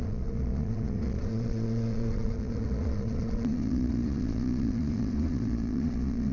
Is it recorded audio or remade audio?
remade